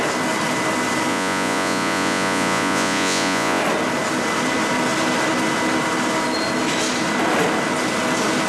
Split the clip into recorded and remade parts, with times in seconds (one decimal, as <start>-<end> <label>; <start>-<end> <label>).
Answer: 0.0-1.1 recorded; 1.1-3.6 remade; 3.6-8.5 recorded